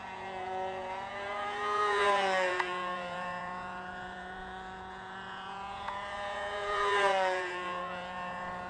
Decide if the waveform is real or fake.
fake